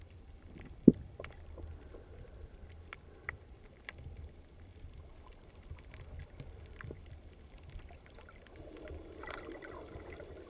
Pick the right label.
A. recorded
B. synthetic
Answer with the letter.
B